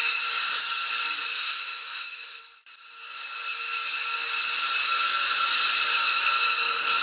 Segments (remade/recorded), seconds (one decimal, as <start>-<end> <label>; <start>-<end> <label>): 0.0-1.3 recorded; 1.3-2.4 remade; 2.4-7.0 recorded